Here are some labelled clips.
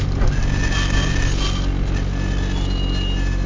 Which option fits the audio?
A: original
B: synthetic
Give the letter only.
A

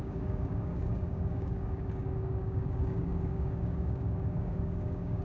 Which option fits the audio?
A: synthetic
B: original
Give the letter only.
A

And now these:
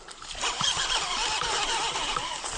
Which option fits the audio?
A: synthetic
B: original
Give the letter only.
B